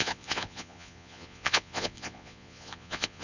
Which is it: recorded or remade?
remade